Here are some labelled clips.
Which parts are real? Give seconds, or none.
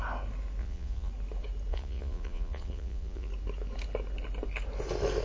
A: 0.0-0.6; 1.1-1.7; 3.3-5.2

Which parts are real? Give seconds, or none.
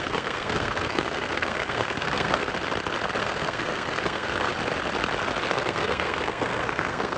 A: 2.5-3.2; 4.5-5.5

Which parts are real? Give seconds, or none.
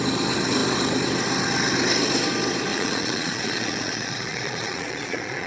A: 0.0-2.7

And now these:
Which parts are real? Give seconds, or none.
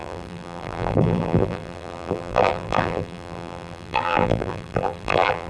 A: none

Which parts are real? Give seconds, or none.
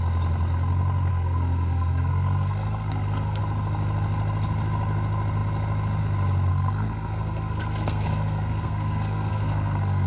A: 0.0-1.1; 3.4-6.5